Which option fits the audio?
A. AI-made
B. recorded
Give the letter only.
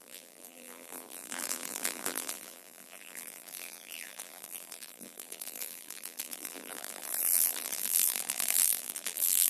A